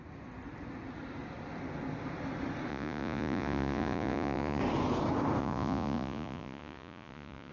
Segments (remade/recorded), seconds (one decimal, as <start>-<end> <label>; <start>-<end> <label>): 0.0-2.7 recorded; 2.7-4.6 remade; 4.6-5.4 recorded; 5.4-7.5 remade